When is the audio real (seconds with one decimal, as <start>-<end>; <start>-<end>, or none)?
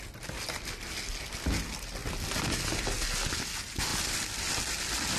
0.0-3.9